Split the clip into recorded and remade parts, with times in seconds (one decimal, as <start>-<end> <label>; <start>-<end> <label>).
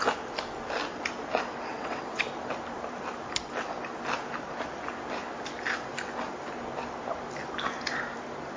0.0-1.7 recorded; 1.7-2.2 remade; 2.2-8.6 recorded